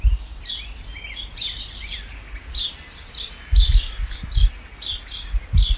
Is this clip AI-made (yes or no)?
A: no